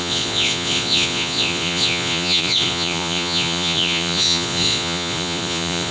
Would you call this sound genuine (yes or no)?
no